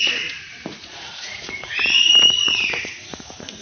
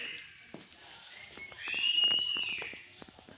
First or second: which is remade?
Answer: first